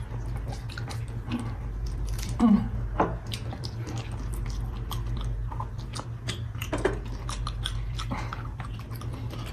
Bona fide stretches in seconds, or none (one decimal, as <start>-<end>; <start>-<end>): 0.0-9.5